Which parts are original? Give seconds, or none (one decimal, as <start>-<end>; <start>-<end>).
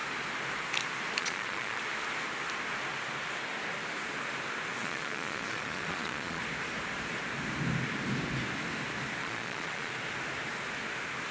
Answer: 0.0-1.2; 1.8-4.8; 6.4-9.2; 9.9-11.3